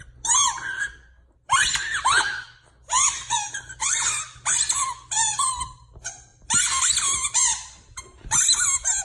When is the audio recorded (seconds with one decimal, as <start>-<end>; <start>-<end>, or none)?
0.0-9.0